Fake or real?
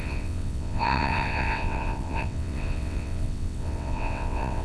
fake